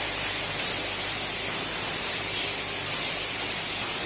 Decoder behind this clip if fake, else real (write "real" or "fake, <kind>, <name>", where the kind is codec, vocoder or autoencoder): real